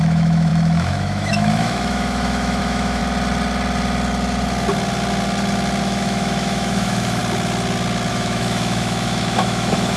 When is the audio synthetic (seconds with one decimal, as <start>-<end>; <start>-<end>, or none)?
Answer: 0.0-3.0; 5.8-7.2; 8.1-10.0